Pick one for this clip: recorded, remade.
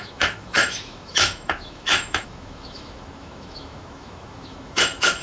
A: remade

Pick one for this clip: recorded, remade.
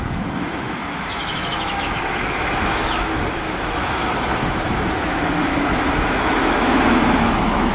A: remade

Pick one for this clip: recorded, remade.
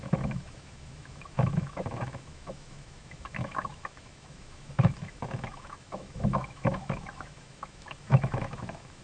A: remade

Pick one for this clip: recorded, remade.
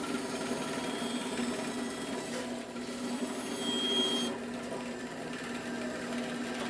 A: recorded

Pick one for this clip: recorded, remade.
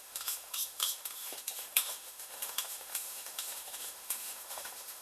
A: remade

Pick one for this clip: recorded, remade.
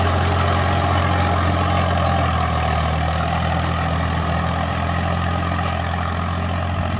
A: recorded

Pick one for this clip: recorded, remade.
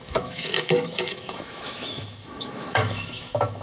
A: remade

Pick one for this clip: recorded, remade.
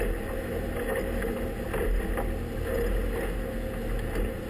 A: recorded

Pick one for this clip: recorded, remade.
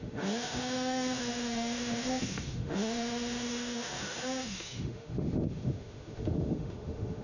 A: remade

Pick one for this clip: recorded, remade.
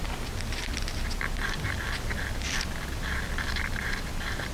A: recorded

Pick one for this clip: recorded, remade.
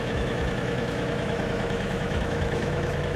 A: remade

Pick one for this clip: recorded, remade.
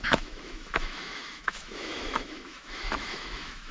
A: remade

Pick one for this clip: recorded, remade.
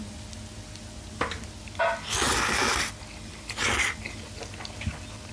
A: recorded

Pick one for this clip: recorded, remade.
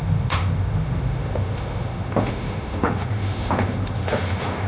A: remade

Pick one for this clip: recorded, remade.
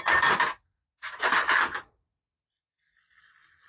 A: recorded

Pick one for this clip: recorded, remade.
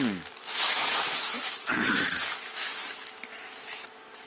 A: remade